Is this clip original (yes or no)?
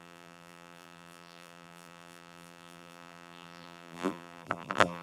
no